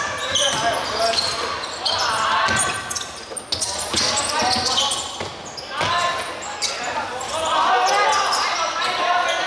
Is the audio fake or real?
real